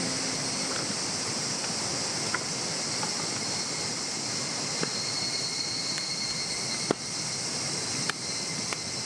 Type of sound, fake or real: real